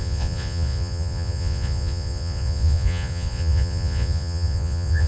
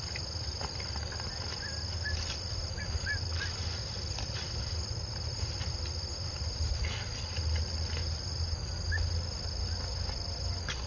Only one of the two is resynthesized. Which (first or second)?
first